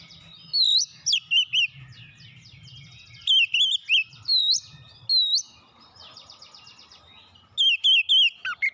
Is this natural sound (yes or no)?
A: yes